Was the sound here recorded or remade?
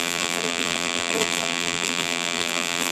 remade